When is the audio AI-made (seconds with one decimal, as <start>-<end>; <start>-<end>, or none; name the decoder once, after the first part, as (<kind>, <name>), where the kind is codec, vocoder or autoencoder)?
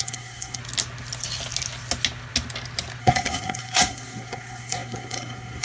0.0-0.6 (codec, SNAC); 3.0-5.6